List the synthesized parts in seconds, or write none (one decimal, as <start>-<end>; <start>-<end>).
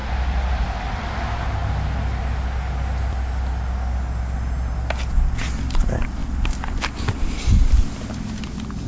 none